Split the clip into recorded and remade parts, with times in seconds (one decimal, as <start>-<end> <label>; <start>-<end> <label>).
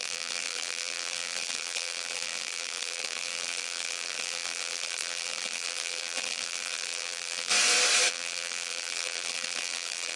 0.0-7.5 remade; 7.5-8.1 recorded; 8.1-10.2 remade